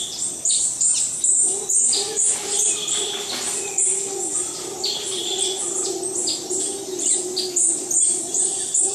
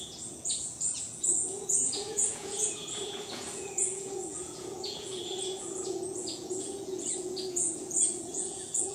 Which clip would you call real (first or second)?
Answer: first